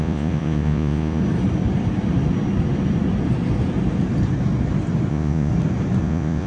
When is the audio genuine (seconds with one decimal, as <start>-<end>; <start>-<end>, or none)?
1.2-5.1; 5.5-6.0